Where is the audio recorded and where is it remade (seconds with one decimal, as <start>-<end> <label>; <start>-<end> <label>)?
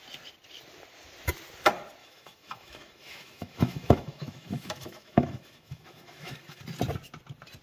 0.0-2.0 recorded; 2.0-6.6 remade; 6.6-7.6 recorded